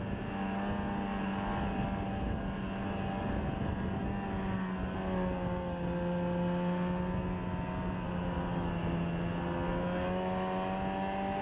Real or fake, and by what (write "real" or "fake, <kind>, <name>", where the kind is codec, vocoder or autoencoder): real